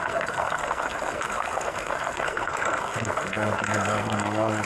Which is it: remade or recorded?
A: remade